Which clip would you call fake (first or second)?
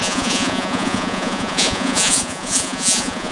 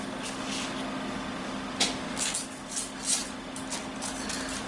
first